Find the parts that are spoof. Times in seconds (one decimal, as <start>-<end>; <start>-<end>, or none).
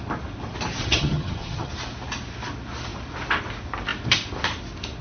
0.8-1.7